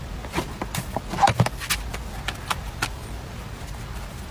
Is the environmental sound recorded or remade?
recorded